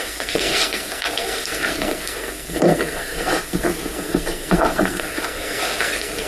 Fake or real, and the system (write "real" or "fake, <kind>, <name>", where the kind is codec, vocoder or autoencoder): fake, codec, SNAC